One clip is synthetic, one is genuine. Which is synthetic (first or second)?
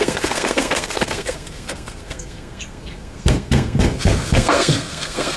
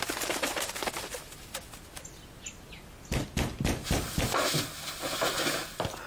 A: first